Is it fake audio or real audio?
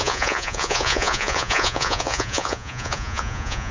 fake